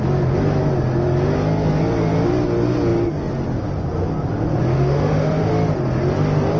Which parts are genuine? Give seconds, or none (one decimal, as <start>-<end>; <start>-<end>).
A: 0.0-4.7; 5.5-6.6